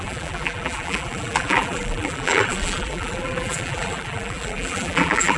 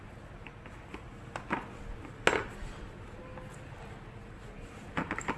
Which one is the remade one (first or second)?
first